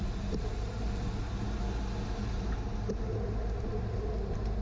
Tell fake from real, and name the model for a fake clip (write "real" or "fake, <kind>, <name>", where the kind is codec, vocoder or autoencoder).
real